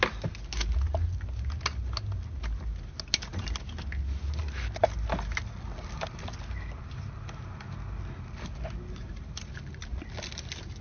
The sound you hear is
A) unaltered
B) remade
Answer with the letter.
A